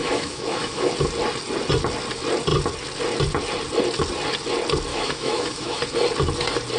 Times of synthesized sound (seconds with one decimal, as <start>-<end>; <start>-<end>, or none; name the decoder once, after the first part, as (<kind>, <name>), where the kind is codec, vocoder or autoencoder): 0.0-0.9 (autoencoder, DAC-VAE); 4.9-5.8